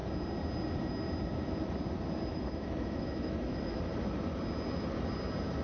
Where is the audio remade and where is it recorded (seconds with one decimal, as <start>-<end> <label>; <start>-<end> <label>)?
0.0-2.3 recorded; 2.3-3.8 remade; 3.8-5.6 recorded